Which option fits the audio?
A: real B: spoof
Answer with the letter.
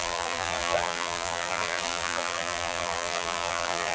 B